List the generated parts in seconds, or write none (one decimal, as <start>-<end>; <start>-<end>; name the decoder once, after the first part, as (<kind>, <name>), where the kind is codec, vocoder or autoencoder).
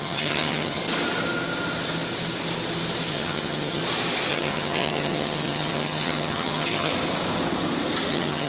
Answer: 0.0-0.8 (vocoder, HiFi-GAN); 3.1-3.8; 4.3-6.9; 8.1-8.5